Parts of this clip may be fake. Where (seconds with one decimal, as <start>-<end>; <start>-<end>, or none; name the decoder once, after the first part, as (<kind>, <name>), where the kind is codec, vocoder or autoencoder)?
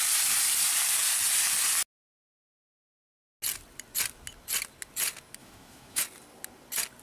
5.4-6.0 (autoencoder, DAC-VAE)